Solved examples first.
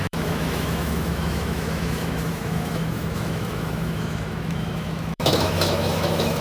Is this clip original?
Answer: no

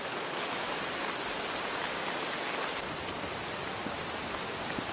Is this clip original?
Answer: yes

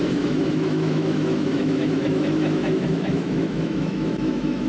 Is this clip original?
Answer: no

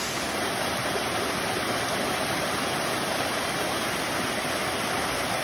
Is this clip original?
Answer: yes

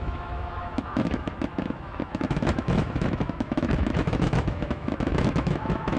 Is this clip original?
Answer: no